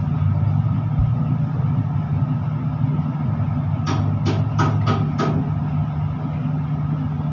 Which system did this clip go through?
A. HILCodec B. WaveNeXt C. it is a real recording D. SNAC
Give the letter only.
C